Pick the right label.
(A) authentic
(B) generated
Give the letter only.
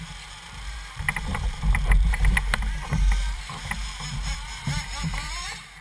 B